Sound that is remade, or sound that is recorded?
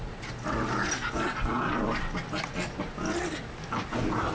recorded